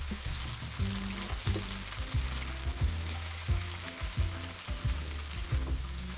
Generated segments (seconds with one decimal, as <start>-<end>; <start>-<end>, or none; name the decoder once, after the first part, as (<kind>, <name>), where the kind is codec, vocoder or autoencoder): 0.0-0.4 (autoencoder, DAC-VAE); 2.7-3.7; 5.8-6.2